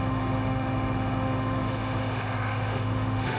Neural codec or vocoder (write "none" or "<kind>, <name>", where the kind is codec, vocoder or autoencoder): autoencoder, DAC-VAE